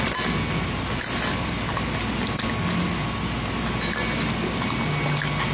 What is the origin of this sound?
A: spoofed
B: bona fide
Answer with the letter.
B